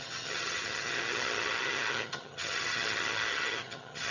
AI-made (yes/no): yes